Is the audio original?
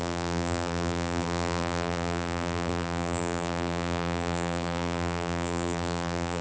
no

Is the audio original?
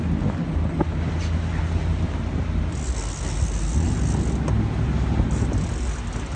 yes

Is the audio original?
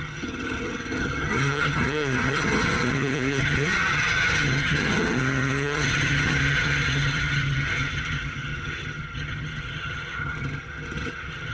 no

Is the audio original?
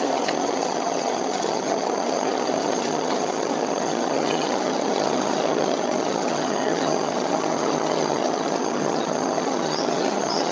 no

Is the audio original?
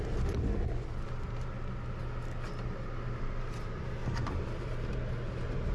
yes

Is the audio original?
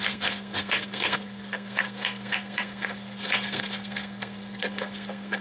no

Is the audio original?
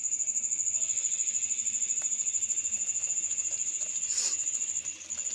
yes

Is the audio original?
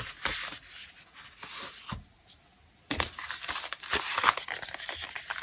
yes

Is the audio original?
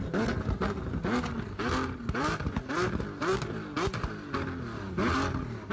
yes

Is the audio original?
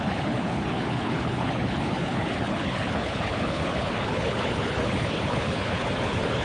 no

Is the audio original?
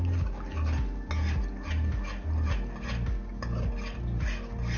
yes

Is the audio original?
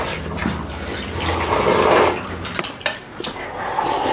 yes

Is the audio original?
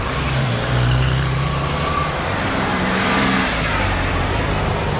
no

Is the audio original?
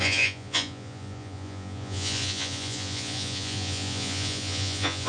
no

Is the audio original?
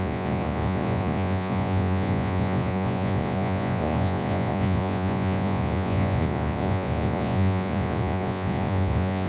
no